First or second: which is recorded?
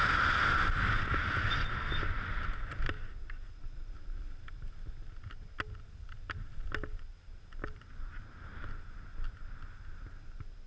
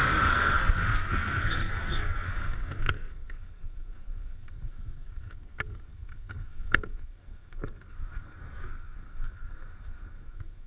first